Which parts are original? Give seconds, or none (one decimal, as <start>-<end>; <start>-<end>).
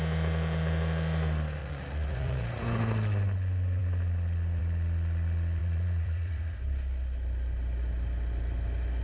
0.0-1.6; 2.6-5.6; 6.6-9.0